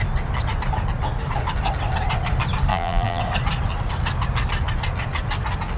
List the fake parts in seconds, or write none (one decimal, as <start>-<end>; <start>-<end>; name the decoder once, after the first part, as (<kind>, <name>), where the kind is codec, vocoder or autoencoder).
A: 2.7-3.2 (vocoder, BigVGAN v2)